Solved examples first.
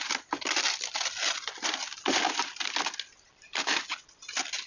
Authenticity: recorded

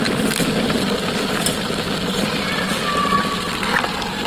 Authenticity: recorded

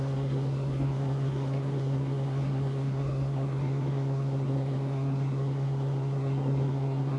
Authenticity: remade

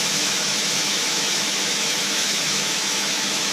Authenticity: remade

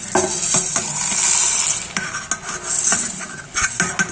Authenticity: recorded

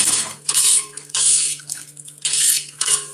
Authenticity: remade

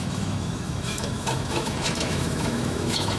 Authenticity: remade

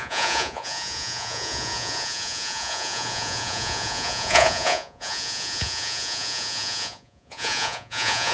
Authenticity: remade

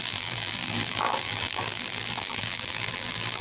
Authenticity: remade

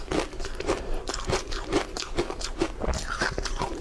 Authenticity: recorded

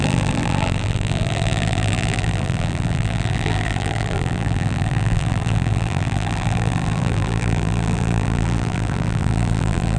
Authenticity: remade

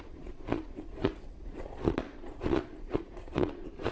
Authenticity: remade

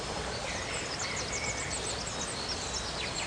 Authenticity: recorded